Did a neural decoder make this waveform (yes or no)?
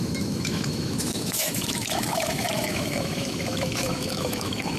yes